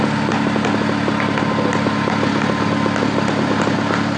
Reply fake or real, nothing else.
real